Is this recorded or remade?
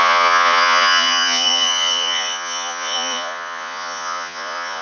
remade